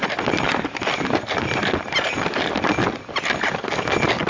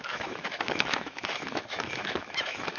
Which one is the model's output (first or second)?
second